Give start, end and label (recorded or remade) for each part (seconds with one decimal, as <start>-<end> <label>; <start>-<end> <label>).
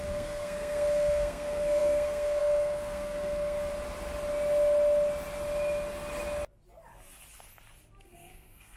0.0-3.7 remade; 3.7-8.0 recorded; 8.0-8.8 remade